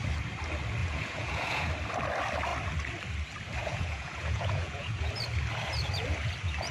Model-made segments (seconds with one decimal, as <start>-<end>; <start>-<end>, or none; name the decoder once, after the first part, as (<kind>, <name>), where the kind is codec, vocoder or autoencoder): 0.8-1.7 (vocoder, Vocos); 3.6-5.1